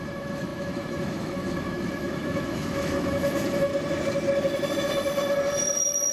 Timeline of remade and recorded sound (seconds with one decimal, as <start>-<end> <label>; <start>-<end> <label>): 0.0-3.7 remade; 3.7-6.1 recorded